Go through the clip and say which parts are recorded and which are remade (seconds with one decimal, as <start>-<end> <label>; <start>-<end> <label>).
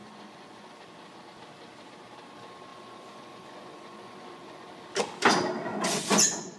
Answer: 0.0-0.8 remade; 0.8-2.7 recorded; 2.7-4.7 remade; 4.7-5.7 recorded; 5.7-6.6 remade